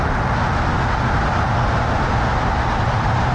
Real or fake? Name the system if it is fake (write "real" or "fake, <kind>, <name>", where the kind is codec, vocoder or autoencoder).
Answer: real